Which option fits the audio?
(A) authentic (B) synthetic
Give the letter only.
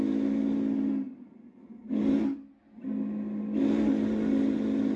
A